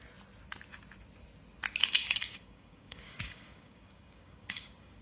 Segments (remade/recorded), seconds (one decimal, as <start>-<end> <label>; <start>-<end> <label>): 0.0-1.8 recorded; 1.8-5.0 remade